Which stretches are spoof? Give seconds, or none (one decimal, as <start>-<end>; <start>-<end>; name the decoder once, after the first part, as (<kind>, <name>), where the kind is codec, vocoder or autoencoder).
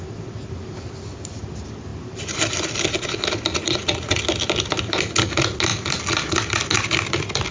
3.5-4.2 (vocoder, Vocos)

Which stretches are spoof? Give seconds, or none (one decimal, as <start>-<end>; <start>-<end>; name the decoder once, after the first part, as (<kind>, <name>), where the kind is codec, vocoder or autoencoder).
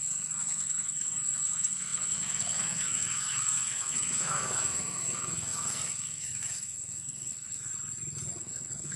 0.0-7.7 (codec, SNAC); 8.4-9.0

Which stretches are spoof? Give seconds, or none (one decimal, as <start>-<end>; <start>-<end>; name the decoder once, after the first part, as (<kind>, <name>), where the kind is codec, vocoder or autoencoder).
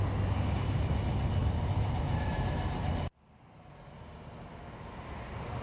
none